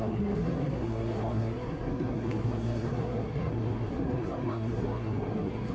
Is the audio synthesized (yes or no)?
yes